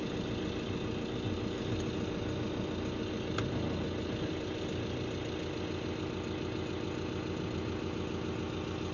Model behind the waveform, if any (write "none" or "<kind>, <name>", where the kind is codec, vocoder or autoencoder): none